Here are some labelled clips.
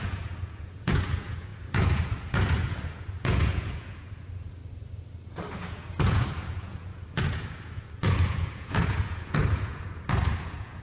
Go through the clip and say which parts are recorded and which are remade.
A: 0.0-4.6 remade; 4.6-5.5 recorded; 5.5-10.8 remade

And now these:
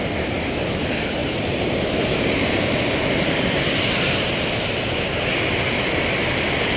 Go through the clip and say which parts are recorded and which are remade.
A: 0.0-6.8 recorded

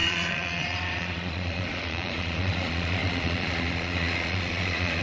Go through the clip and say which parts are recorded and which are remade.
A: 0.0-5.0 remade

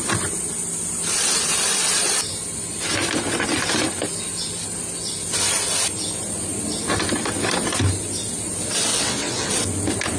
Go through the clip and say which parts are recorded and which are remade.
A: 0.0-8.9 recorded; 8.9-9.5 remade; 9.5-10.2 recorded

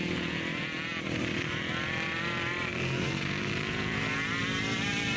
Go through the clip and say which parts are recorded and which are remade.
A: 0.0-5.2 remade

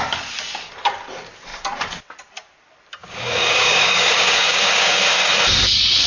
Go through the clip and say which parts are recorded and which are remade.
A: 0.0-3.0 recorded; 3.0-5.3 remade; 5.3-6.1 recorded